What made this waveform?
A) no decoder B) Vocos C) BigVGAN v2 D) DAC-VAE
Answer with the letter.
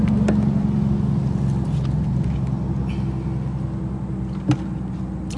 A